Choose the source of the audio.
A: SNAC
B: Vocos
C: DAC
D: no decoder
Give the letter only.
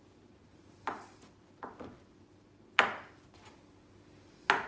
D